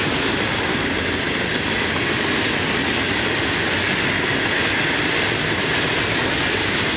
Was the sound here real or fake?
real